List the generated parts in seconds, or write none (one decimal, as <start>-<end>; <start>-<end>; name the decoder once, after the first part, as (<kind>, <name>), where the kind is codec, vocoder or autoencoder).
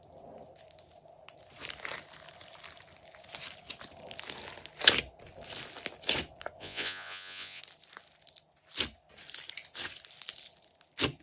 6.6-7.6 (vocoder, Vocos)